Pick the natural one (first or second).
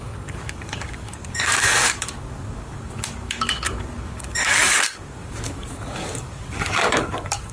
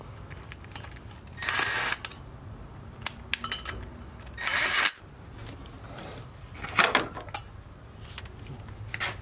second